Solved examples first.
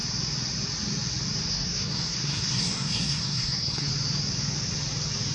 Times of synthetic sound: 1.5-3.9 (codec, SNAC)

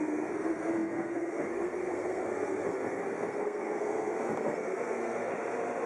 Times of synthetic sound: 0.0-5.3 (codec, SNAC)

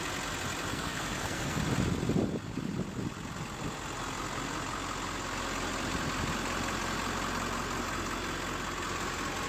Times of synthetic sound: 0.7-1.6 (codec, SNAC)